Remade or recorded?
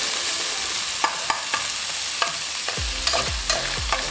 recorded